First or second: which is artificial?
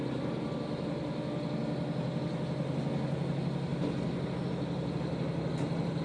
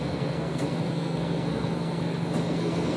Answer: second